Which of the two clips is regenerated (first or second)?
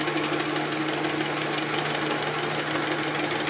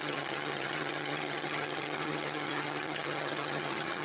second